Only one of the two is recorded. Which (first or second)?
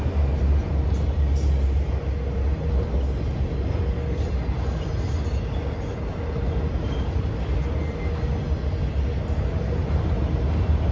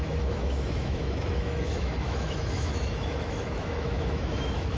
first